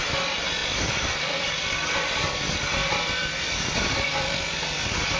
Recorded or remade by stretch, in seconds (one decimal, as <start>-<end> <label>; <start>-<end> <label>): 0.0-0.6 recorded; 0.6-2.3 remade; 2.3-2.8 recorded; 2.8-4.4 remade; 4.4-5.2 recorded